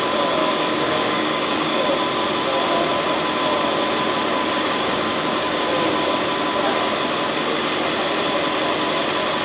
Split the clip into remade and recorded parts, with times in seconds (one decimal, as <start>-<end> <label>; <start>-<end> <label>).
0.0-0.4 recorded; 0.4-1.9 remade; 1.9-4.4 recorded; 4.4-6.1 remade; 6.1-9.4 recorded